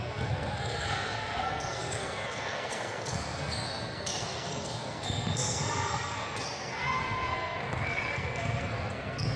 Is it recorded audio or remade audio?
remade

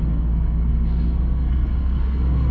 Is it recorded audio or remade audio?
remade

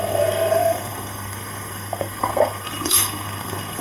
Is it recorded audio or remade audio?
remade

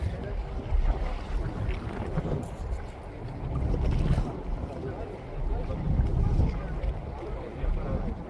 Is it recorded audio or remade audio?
recorded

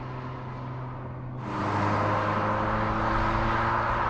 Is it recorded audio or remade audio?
recorded